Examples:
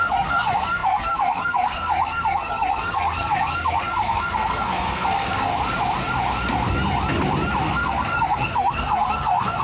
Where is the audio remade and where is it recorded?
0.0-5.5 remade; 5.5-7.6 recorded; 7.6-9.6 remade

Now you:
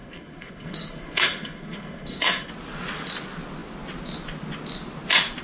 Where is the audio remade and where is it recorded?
0.0-2.5 remade; 2.5-5.4 recorded